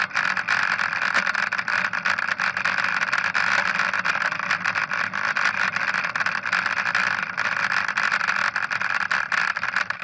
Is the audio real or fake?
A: real